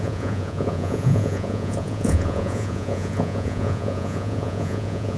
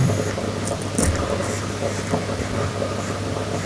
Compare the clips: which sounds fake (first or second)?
first